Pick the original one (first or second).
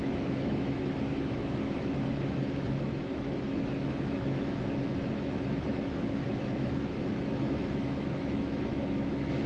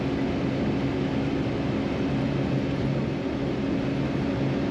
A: second